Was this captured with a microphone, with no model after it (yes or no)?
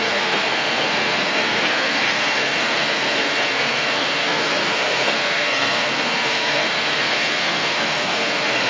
no